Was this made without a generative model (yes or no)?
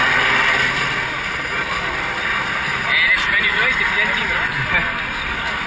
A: yes